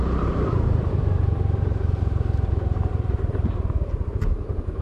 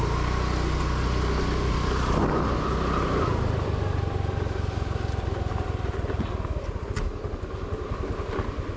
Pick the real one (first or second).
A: second